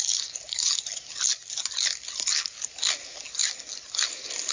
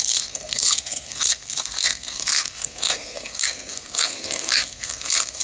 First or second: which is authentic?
first